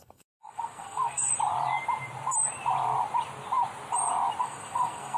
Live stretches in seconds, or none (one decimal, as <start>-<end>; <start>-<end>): 1.3-4.4

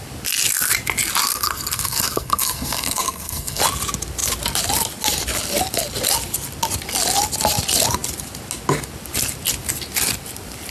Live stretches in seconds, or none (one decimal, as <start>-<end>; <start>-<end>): 0.0-1.3; 3.6-10.7